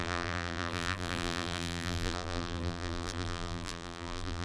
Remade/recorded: remade